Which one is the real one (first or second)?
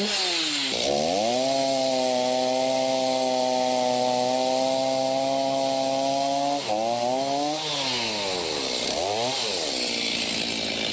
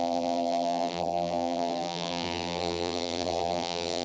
first